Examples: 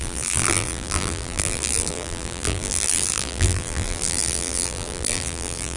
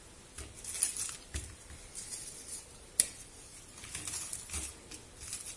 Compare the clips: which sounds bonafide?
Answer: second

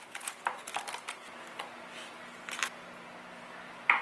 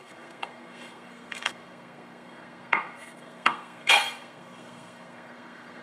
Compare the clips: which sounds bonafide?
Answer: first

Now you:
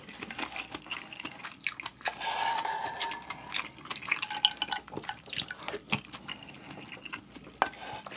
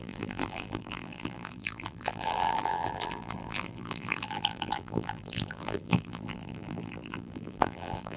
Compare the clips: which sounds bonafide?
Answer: first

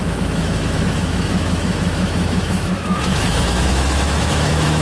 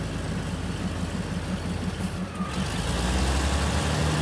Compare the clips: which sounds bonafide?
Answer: second